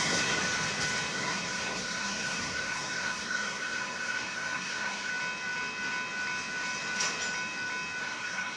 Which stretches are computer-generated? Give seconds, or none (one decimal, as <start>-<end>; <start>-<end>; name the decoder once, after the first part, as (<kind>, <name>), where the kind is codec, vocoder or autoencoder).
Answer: 0.0-0.4 (codec, SNAC); 1.1-5.1; 8.0-8.6